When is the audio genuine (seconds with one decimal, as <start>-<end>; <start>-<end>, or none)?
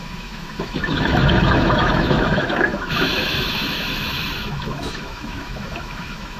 none